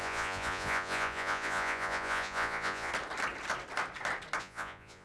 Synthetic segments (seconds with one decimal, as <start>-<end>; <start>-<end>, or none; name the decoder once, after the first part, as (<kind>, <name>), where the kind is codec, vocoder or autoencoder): 0.0-2.9 (vocoder, Vocos); 4.4-5.0